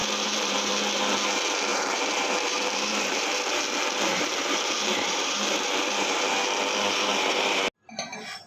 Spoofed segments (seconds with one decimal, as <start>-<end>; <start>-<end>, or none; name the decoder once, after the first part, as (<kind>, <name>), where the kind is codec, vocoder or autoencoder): 0.0-0.7 (vocoder, BigVGAN v2); 1.7-6.2